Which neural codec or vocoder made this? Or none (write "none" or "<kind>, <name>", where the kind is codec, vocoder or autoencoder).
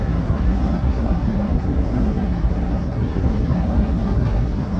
codec, SNAC